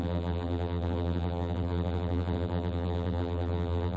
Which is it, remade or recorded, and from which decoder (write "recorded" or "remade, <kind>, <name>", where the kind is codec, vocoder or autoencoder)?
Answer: remade, vocoder, BigVGAN v2